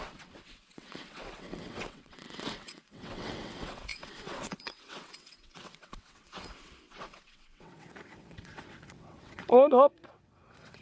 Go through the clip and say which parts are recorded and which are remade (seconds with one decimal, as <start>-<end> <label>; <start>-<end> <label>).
0.0-10.8 remade